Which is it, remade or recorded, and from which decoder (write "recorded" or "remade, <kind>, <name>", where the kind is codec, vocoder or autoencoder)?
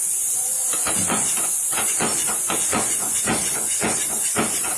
remade, vocoder, Vocos